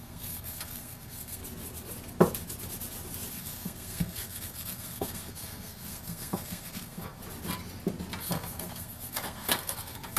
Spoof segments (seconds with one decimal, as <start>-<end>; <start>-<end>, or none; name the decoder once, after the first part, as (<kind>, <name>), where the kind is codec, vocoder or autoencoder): 0.0-1.4 (codec, SNAC); 3.3-7.2; 8.2-10.2